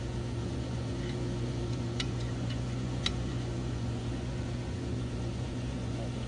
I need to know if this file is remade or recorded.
remade